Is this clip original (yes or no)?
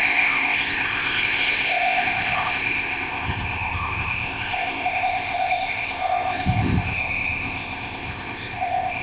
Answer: no